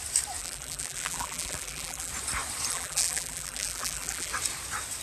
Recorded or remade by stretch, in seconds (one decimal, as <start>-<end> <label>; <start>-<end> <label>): 0.0-0.4 recorded; 0.4-2.1 remade; 2.1-2.7 recorded; 2.7-4.3 remade; 4.3-5.0 recorded